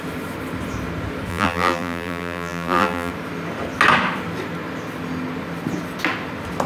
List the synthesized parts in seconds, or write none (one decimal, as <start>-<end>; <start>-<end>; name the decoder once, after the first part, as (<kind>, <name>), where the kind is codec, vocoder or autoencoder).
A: 1.3-3.1 (vocoder, BigVGAN v2)